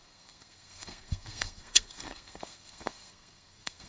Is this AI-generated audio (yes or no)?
yes